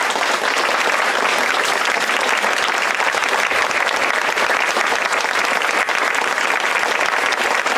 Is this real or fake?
real